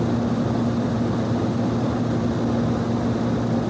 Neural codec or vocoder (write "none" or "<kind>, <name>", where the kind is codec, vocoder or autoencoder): none